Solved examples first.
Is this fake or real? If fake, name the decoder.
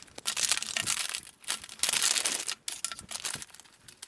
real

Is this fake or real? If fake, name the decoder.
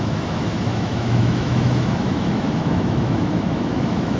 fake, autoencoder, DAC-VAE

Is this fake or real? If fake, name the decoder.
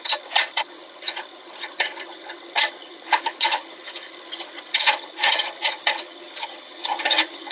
fake, vocoder, HiFi-GAN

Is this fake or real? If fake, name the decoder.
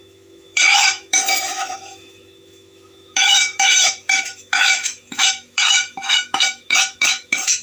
fake, autoencoder, DAC-VAE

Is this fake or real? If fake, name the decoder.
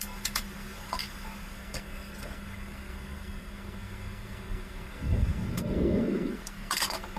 fake, codec, SNAC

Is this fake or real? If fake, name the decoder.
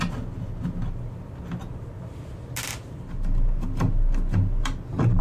real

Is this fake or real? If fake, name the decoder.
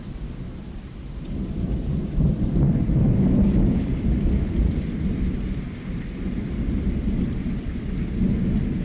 fake, vocoder, BigVGAN v2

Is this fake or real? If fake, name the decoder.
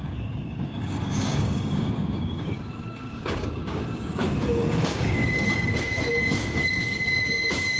fake, codec, DAC